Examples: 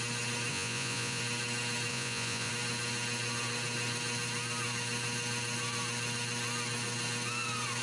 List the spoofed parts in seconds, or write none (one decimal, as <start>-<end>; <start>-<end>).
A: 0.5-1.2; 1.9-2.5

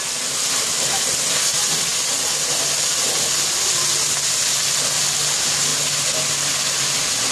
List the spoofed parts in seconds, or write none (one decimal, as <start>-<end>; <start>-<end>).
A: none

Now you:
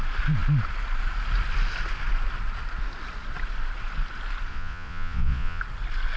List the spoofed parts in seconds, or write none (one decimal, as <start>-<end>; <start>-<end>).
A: 4.5-5.6

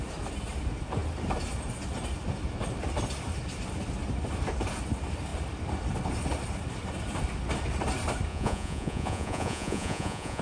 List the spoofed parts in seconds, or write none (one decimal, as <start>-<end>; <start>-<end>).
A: 8.3-10.4

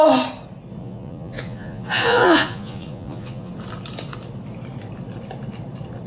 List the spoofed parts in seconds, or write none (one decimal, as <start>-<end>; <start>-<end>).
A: 0.8-3.5